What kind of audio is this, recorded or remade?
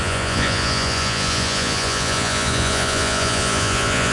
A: remade